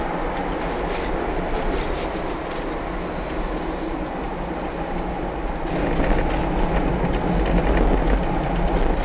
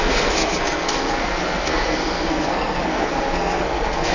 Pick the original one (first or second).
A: first